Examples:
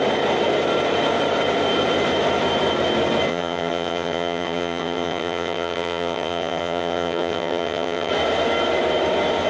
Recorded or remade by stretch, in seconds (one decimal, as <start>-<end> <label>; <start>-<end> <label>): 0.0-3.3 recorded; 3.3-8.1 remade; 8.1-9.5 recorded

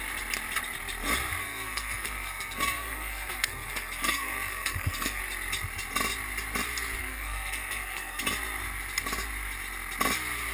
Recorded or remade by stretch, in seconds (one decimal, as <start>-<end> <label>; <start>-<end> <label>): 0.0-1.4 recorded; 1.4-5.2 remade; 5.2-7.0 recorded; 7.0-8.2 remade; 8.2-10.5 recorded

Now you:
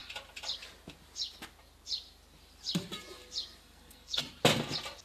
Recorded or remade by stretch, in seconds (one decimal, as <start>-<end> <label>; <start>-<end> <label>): 0.0-3.6 recorded; 3.6-4.2 remade; 4.2-5.0 recorded